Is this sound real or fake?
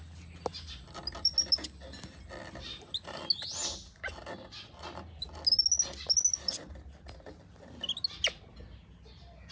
real